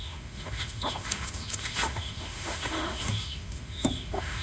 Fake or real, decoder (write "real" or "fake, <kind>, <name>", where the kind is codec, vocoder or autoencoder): fake, autoencoder, DAC-VAE